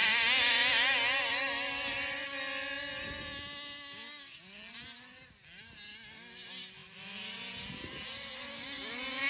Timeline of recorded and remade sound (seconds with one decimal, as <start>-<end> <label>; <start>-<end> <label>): 0.0-9.3 recorded